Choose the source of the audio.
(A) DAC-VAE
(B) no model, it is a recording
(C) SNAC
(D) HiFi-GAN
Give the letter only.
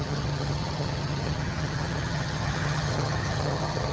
D